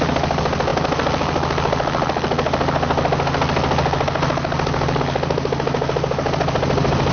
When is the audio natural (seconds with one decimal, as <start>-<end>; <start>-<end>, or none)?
0.0-7.1